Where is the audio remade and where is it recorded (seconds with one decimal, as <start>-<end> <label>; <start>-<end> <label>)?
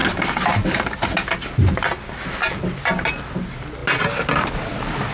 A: 0.0-5.1 recorded